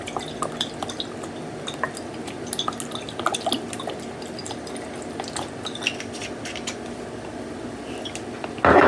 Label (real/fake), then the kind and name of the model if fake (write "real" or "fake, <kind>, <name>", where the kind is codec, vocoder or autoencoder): real